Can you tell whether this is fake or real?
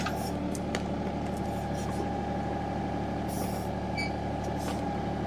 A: real